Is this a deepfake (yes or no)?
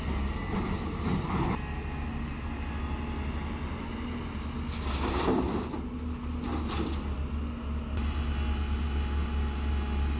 no